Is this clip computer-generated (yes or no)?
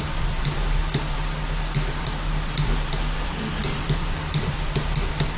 yes